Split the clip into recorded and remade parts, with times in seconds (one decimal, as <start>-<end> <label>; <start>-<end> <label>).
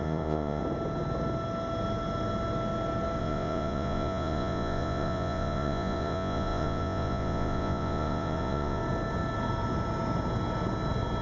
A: 0.0-0.6 remade; 0.6-3.2 recorded; 3.2-8.8 remade; 8.8-11.2 recorded